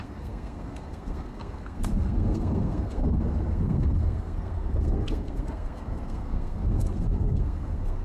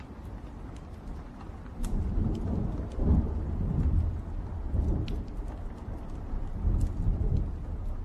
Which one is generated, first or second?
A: first